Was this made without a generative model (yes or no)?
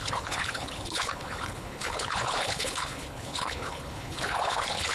no